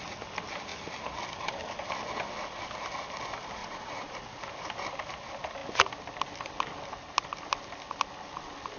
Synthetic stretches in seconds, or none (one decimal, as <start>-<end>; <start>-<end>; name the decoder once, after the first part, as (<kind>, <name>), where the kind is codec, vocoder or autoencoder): 3.6-4.1 (vocoder, Vocos)